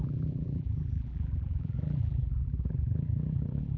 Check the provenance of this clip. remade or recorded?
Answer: remade